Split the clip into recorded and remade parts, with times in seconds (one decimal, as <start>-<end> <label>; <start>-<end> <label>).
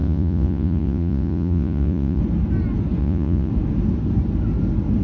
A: 0.0-2.2 remade; 2.2-3.0 recorded; 3.0-3.5 remade; 3.5-5.0 recorded